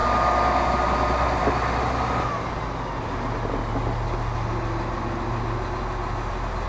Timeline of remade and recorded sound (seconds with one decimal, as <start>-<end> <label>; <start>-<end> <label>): 0.0-6.7 recorded